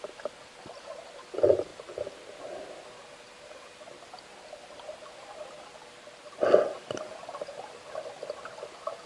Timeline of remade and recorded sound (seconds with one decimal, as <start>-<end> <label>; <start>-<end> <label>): 0.0-3.0 recorded; 3.0-3.8 remade; 3.8-9.1 recorded